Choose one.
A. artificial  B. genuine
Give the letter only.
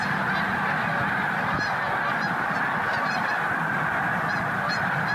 B